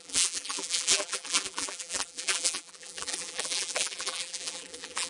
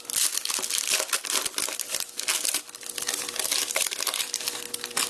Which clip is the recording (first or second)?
second